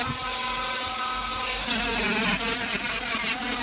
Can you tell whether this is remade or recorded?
recorded